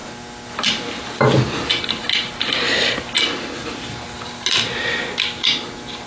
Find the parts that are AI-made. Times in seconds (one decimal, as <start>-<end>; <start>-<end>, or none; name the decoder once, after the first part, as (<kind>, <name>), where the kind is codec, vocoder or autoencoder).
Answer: none